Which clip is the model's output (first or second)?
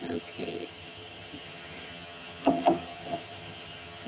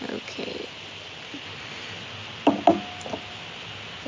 first